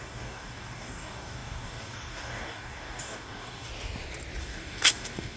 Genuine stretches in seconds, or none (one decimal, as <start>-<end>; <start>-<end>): 3.7-4.4